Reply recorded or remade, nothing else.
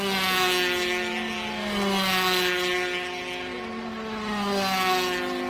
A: recorded